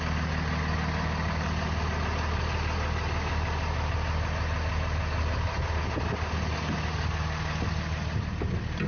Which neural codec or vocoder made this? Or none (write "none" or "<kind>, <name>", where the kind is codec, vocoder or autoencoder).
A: none